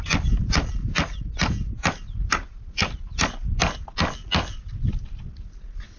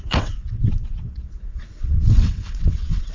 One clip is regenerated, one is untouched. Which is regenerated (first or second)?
second